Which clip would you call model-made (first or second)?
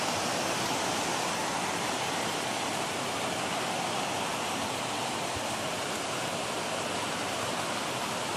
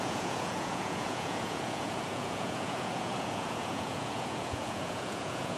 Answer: second